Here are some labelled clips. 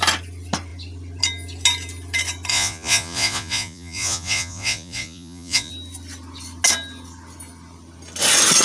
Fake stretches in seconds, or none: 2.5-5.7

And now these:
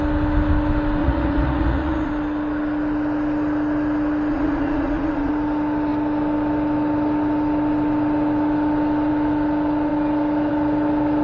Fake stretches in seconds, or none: 1.0-2.1; 4.3-5.3

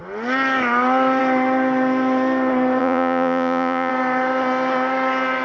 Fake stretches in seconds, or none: 2.8-3.9

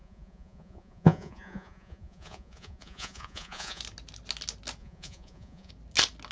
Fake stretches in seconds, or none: 0.0-3.8; 4.8-5.7

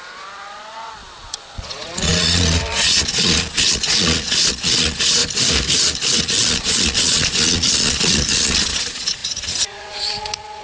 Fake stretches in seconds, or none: 0.0-5.2; 6.2-10.6